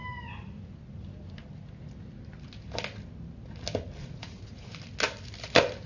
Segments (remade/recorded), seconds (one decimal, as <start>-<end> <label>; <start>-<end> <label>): 0.0-4.0 recorded; 4.0-4.7 remade; 4.7-5.9 recorded